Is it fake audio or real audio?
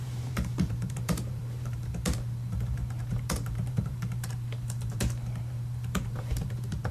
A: fake